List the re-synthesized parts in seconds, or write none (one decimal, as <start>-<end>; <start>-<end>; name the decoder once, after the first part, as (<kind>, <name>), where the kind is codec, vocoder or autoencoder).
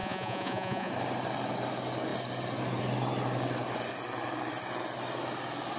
0.0-0.9 (vocoder, Vocos)